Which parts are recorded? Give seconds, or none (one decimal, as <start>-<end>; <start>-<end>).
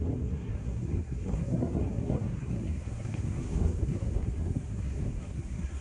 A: none